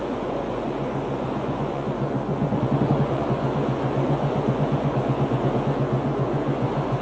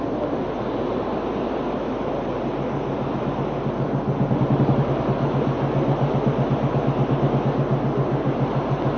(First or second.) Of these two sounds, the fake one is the first